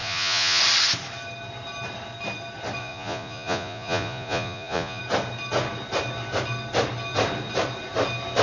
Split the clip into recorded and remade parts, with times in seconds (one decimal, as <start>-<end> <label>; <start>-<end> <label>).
0.0-0.6 remade; 0.6-2.8 recorded; 2.8-5.0 remade; 5.0-8.4 recorded